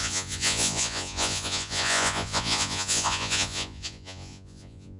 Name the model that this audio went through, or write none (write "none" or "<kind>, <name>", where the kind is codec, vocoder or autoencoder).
vocoder, Vocos